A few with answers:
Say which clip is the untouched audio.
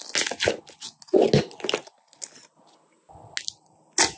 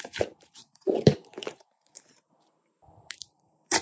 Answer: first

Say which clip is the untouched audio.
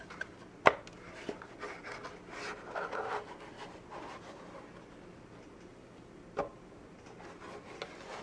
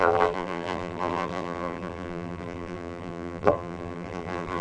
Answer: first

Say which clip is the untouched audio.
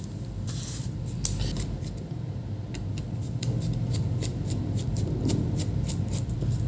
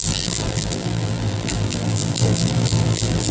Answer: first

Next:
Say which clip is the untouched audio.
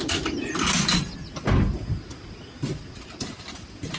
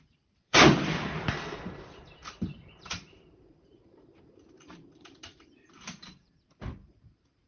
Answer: first